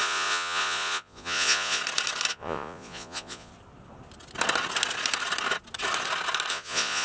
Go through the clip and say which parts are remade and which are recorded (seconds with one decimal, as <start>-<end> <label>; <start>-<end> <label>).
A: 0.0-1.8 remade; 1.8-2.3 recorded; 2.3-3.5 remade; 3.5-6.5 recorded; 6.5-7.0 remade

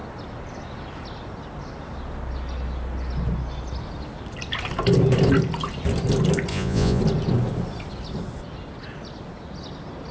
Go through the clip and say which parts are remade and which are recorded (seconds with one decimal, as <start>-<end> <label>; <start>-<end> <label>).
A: 0.0-6.5 recorded; 6.5-7.0 remade; 7.0-10.1 recorded

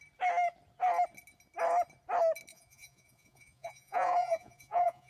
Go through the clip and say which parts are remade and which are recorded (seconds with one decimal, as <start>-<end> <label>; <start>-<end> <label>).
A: 0.0-2.5 recorded; 2.5-5.1 remade

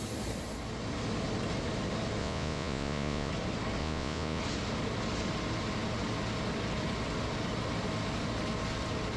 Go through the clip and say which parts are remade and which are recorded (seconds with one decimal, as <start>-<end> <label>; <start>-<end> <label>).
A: 0.0-2.2 recorded; 2.2-3.3 remade; 3.3-3.8 recorded; 3.8-4.4 remade; 4.4-9.2 recorded

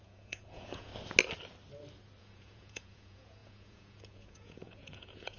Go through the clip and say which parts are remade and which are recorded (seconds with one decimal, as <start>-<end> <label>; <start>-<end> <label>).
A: 0.0-0.9 remade; 0.9-2.2 recorded; 2.2-5.4 remade

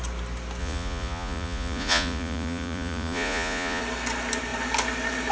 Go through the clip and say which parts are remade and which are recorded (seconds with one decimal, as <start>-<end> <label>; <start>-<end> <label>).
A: 0.0-0.6 recorded; 0.6-3.8 remade; 3.8-5.3 recorded